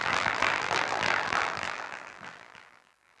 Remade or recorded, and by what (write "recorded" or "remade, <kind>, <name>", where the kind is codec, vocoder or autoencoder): remade, vocoder, BigVGAN v2